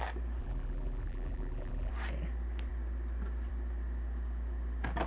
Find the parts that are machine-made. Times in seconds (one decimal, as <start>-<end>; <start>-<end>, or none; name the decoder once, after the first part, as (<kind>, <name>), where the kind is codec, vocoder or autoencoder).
0.4-1.9 (vocoder, BigVGAN v2)